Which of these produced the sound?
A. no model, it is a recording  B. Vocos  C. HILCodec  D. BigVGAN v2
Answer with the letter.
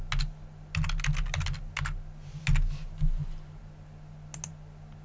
A